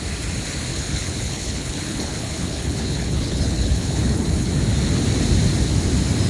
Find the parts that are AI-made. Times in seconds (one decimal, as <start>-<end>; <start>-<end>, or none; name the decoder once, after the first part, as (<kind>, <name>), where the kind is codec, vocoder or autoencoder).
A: 0.7-4.5 (codec, HILCodec)